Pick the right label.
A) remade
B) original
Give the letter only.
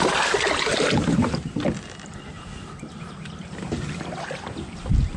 B